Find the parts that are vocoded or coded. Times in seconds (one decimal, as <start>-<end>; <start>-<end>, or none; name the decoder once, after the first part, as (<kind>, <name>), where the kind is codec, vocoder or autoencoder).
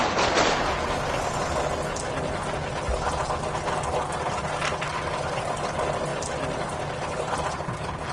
6.1-8.1 (vocoder, BigVGAN v2)